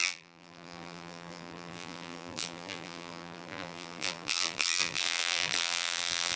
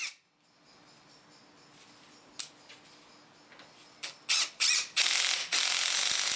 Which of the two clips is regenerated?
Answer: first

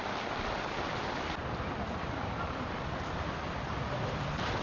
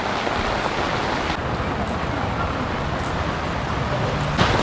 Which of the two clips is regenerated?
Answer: first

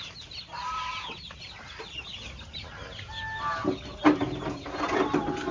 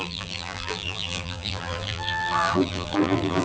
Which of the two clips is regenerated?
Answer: second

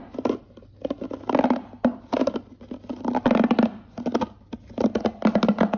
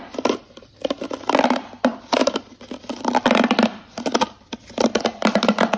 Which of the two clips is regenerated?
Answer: second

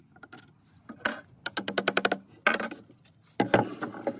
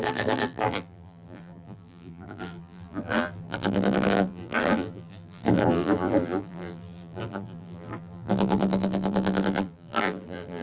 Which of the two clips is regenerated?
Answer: second